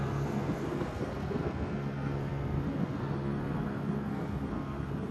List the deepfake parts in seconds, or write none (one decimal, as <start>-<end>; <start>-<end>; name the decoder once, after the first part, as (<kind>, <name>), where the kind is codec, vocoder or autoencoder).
0.0-5.1 (codec, SNAC)